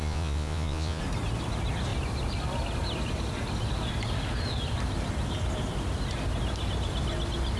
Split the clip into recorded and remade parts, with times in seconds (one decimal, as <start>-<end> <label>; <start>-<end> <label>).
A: 0.0-1.0 remade; 1.0-7.6 recorded